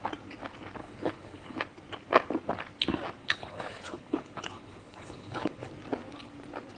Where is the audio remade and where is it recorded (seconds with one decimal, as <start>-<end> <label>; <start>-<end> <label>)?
0.0-0.8 recorded; 0.8-1.6 remade; 1.6-3.2 recorded; 3.2-5.7 remade; 5.7-6.8 recorded